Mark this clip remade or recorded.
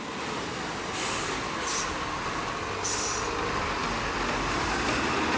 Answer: recorded